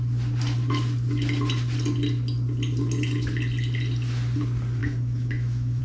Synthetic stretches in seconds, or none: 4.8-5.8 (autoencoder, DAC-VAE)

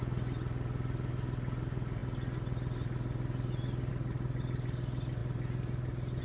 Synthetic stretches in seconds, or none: none

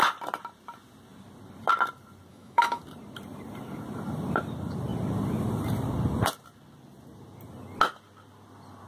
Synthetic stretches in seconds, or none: 2.3-2.8 (autoencoder, DAC-VAE)

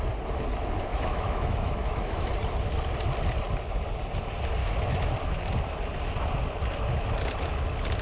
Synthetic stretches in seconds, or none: 0.9-2.3 (autoencoder, DAC-VAE); 4.6-5.1

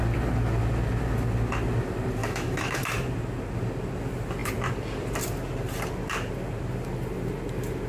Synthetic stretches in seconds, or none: 2.2-2.8 (autoencoder, DAC-VAE)

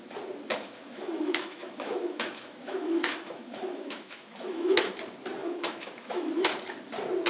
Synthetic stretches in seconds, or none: 0.5-4.9 (autoencoder, DAC-VAE); 5.4-6.3

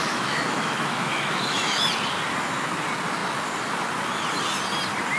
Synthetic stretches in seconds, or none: 0.0-1.9 (autoencoder, DAC-VAE)